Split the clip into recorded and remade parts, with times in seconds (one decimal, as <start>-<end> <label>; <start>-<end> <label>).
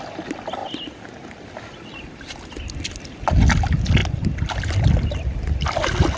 0.0-6.2 recorded